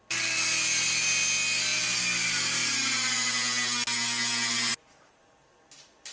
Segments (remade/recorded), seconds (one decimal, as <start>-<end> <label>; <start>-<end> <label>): 0.0-6.1 recorded